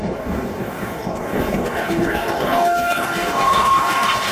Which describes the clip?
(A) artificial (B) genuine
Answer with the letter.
A